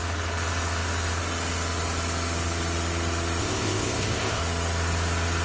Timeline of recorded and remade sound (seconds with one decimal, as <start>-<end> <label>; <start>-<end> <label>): 0.0-3.4 recorded; 3.4-4.4 remade; 4.4-5.4 recorded